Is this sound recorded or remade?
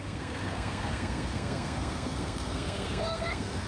remade